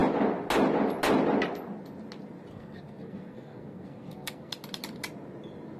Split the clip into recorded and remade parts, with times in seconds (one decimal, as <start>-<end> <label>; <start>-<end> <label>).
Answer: 0.0-2.5 recorded; 2.5-4.5 remade; 4.5-5.8 recorded